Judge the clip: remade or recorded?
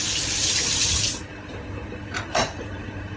remade